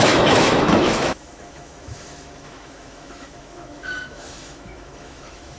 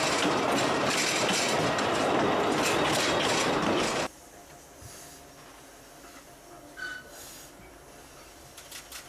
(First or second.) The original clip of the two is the second